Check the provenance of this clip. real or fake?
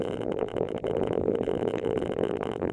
fake